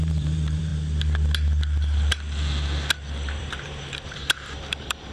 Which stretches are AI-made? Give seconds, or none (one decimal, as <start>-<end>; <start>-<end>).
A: 0.0-0.7; 3.4-5.1